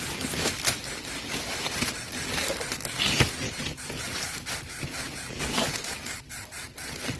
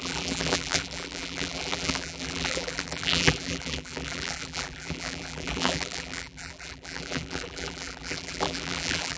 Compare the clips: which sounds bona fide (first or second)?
first